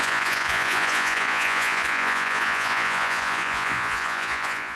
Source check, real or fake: fake